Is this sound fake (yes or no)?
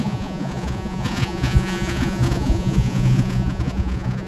yes